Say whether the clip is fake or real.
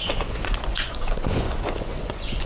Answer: fake